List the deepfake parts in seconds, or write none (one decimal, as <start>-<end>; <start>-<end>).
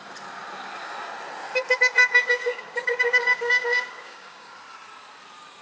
2.0-4.5